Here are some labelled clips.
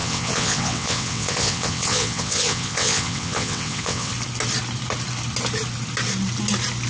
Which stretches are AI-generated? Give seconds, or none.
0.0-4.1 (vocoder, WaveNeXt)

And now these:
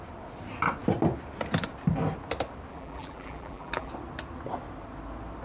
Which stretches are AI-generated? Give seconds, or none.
2.7-3.9 (vocoder, BigVGAN v2)

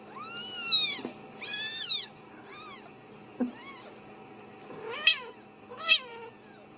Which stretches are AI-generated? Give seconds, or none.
none